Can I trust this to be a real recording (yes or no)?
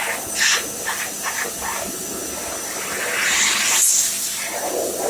yes